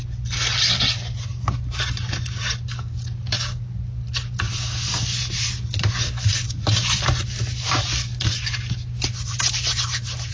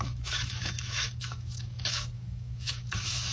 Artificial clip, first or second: second